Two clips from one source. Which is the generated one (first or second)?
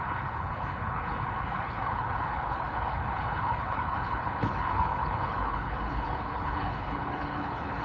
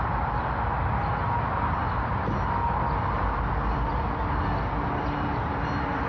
first